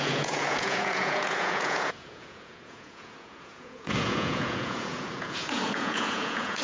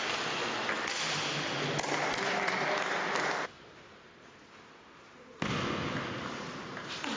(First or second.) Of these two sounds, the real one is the second